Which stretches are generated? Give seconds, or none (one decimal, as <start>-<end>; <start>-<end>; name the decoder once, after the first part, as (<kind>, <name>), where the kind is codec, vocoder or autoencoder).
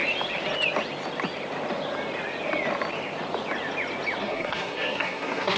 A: 4.2-5.6 (codec, SNAC)